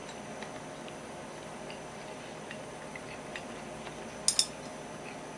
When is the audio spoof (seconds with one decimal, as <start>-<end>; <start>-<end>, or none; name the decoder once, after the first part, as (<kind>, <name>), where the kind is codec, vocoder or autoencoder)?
none